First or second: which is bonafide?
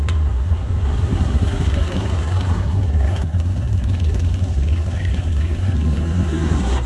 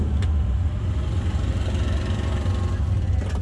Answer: second